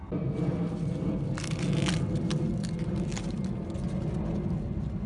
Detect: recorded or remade recorded